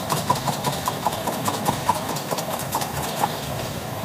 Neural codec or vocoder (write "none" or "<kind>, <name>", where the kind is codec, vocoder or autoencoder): codec, DAC